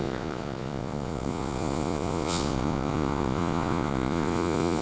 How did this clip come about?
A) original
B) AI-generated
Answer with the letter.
B